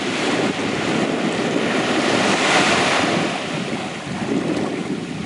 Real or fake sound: fake